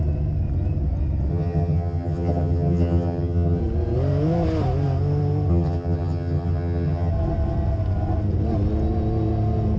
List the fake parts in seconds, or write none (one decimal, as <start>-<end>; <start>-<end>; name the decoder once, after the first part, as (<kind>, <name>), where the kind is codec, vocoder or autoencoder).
1.3-3.6 (vocoder, HiFi-GAN); 5.5-7.1